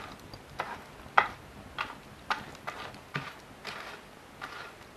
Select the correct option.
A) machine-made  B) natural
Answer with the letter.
B